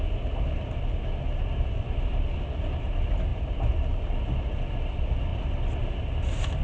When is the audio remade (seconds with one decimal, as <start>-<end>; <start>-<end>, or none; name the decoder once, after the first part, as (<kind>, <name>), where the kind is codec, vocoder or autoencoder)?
none